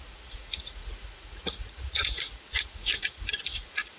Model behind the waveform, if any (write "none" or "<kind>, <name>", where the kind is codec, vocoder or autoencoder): vocoder, Vocos